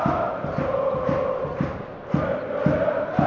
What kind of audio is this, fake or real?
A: real